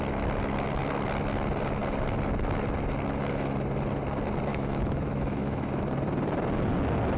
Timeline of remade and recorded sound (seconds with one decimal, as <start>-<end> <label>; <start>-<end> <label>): 0.0-4.5 recorded; 4.5-5.8 remade; 5.8-7.2 recorded